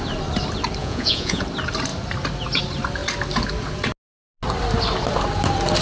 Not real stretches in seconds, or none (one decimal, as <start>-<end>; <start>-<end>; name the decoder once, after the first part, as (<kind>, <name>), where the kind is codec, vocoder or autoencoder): 0.8-1.4 (vocoder, Vocos)